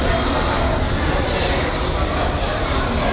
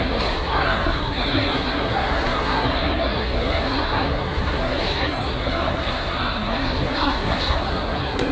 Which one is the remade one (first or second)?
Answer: second